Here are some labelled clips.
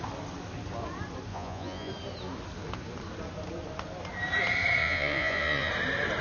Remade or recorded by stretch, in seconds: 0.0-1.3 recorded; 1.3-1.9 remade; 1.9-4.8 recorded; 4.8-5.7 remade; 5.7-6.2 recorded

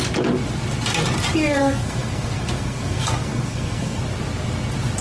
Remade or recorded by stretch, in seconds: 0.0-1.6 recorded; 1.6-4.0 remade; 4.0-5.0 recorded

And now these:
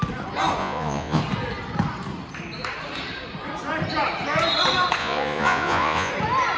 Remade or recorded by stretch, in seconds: 0.0-0.6 recorded; 0.6-1.2 remade; 1.2-5.0 recorded; 5.0-6.1 remade; 6.1-6.6 recorded

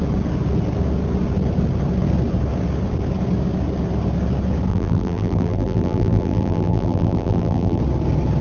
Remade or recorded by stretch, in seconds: 0.0-4.7 recorded; 4.7-7.8 remade; 7.8-8.4 recorded